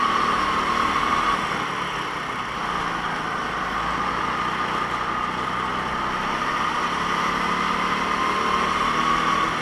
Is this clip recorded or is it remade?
recorded